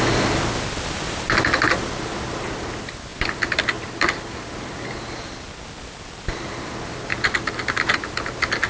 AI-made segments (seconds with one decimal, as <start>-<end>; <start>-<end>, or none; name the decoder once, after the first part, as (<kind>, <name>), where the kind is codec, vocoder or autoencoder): none